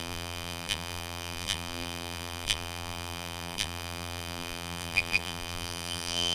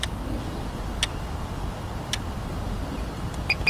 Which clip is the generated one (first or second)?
first